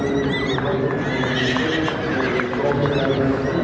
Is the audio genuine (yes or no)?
yes